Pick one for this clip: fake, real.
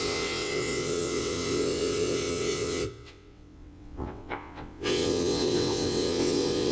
fake